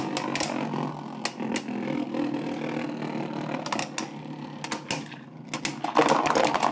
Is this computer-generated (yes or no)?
no